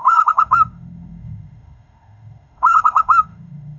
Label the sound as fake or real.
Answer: fake